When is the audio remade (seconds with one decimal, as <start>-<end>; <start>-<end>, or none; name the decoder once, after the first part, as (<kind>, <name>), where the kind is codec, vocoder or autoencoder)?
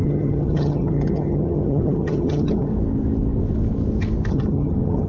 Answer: 0.0-2.7 (vocoder, HiFi-GAN); 4.3-5.1